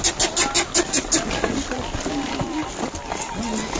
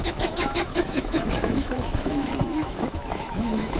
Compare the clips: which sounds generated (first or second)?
second